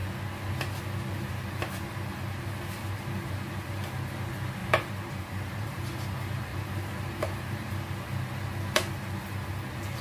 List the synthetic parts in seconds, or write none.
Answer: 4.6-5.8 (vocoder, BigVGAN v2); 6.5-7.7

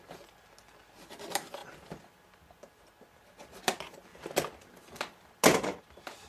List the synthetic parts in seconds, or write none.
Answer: none

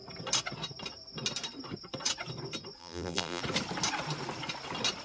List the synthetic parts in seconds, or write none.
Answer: 2.8-3.4 (vocoder, BigVGAN v2)

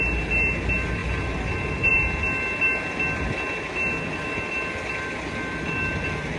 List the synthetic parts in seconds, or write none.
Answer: none

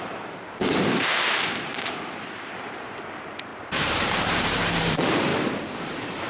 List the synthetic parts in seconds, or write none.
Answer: 0.0-5.3 (vocoder, BigVGAN v2); 5.8-6.3

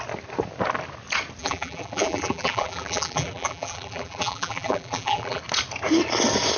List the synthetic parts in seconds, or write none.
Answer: 1.4-5.4 (vocoder, BigVGAN v2)

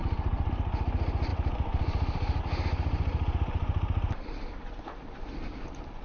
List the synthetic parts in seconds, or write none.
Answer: 0.0-0.5 (vocoder, BigVGAN v2); 1.3-2.4; 3.1-5.3

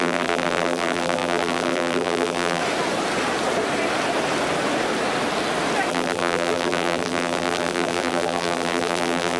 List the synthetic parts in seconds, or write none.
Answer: 0.0-2.6 (vocoder, BigVGAN v2); 5.9-9.4